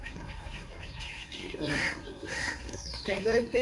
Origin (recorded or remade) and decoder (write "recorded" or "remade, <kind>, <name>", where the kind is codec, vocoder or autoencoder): remade, codec, SNAC